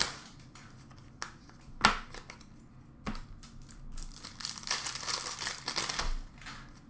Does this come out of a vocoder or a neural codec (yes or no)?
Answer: no